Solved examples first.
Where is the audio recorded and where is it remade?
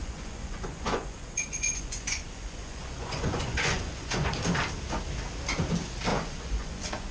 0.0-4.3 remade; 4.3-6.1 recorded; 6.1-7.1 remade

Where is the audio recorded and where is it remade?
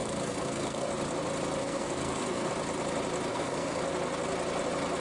0.0-0.9 remade; 0.9-1.6 recorded; 1.6-2.5 remade; 2.5-3.3 recorded; 3.3-3.8 remade; 3.8-5.0 recorded